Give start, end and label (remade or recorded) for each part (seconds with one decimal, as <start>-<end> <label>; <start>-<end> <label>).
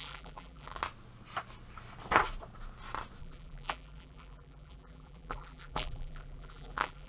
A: 0.0-0.8 remade; 0.8-3.2 recorded; 3.2-7.1 remade